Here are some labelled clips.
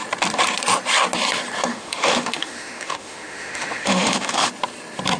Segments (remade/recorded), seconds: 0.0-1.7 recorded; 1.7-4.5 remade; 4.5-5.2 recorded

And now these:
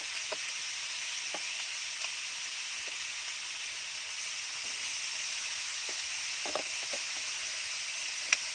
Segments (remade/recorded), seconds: 0.0-5.1 recorded; 5.1-7.7 remade; 7.7-8.5 recorded

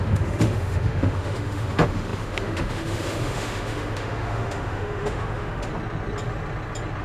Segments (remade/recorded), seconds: 0.0-5.7 remade; 5.7-7.0 recorded